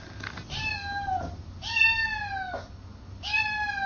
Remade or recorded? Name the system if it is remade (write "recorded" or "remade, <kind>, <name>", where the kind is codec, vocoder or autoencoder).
recorded